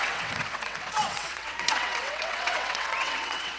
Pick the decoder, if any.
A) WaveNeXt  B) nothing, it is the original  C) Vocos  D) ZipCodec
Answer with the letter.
A